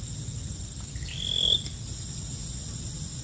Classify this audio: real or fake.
real